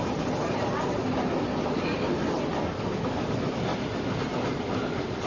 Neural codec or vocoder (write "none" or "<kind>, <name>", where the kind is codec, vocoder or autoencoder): none